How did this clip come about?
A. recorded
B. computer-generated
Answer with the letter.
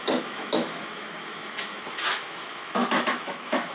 B